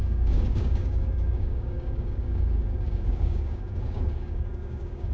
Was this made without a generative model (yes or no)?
no